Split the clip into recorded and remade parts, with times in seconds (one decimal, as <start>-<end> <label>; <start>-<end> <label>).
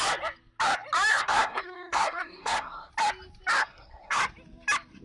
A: 0.0-1.1 recorded; 1.1-2.9 remade; 2.9-3.6 recorded; 3.6-4.2 remade; 4.2-5.0 recorded